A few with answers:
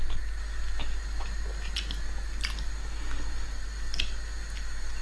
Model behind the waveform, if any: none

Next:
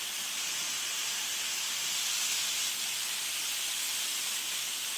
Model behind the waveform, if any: none